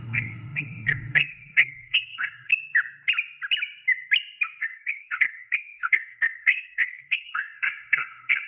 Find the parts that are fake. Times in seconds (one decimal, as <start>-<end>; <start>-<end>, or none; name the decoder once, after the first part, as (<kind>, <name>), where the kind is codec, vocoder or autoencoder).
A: 0.0-2.5 (codec, SNAC); 4.6-8.5